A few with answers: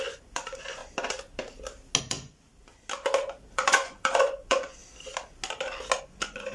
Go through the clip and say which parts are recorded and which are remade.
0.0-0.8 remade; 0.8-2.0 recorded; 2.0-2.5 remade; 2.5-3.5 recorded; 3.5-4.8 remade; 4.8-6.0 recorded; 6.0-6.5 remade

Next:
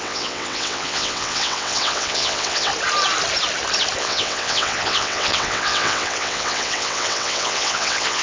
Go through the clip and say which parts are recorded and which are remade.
0.0-2.7 remade; 2.7-4.0 recorded; 4.0-8.2 remade

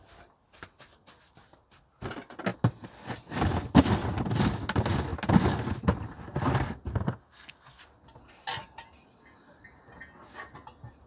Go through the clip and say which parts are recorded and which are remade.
0.0-6.9 recorded; 6.9-7.8 remade; 7.8-11.1 recorded